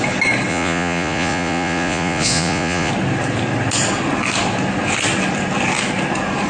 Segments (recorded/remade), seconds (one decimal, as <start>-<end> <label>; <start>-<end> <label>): 0.0-0.5 recorded; 0.5-2.9 remade; 2.9-6.5 recorded